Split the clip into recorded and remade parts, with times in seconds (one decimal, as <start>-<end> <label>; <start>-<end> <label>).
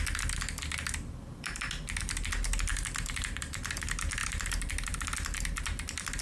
0.0-2.7 recorded; 2.7-3.6 remade; 3.6-4.2 recorded; 4.2-5.6 remade; 5.6-6.2 recorded